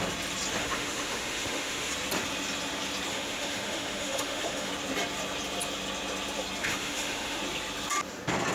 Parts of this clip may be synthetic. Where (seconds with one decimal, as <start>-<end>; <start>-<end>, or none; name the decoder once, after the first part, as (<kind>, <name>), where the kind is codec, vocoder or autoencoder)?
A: 0.6-1.9 (autoencoder, DAC-VAE); 3.1-4.7; 6.6-7.4